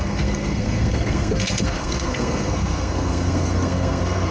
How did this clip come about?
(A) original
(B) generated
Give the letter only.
B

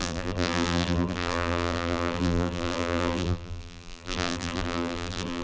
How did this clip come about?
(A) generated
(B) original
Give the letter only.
A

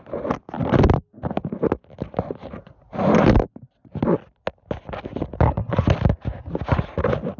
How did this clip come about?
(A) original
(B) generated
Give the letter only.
A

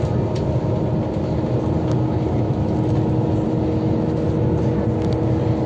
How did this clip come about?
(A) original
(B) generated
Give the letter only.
A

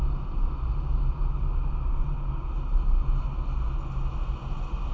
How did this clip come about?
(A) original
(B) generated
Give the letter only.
A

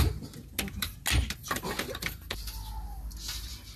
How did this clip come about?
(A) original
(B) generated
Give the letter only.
A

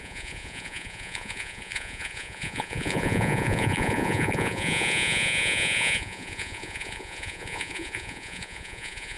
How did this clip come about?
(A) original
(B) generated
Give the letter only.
B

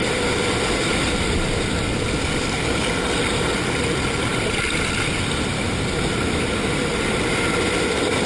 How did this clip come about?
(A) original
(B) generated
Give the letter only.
A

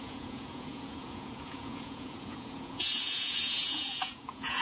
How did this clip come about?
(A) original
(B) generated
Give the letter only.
B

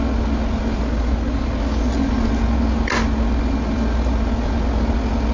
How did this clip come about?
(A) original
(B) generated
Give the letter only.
A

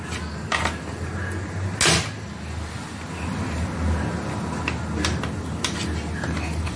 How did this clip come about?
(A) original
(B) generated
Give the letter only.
A